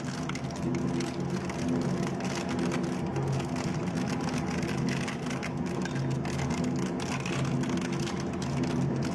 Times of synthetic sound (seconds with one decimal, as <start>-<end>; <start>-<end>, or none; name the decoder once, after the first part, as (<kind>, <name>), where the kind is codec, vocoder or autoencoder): none